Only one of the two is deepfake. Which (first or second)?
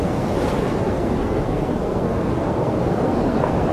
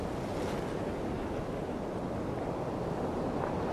first